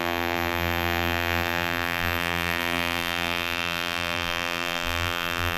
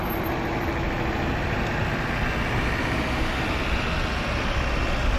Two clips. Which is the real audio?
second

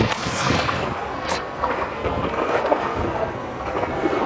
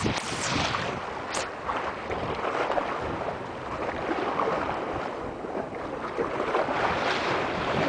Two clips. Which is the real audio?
second